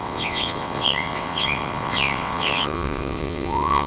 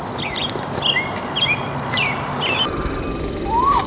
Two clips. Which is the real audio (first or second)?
second